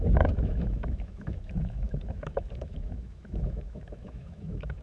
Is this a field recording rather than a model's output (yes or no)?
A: no